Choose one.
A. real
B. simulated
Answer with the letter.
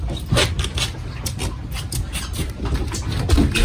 A